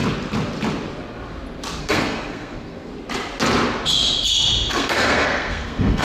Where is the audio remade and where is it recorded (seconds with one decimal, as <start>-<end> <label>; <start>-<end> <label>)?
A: 0.0-1.8 recorded; 1.8-2.9 remade; 2.9-4.7 recorded; 4.7-6.0 remade